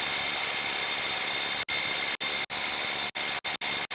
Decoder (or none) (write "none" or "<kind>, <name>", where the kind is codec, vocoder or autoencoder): none